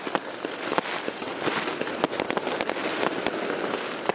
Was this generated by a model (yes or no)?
no